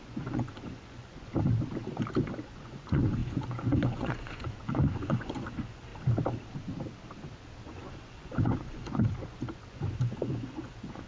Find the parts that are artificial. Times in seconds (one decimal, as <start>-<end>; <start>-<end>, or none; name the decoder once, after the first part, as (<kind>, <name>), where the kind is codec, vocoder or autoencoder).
0.0-1.3 (vocoder, Vocos); 2.3-5.9; 7.6-11.1